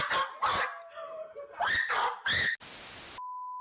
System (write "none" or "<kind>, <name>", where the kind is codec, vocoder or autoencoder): none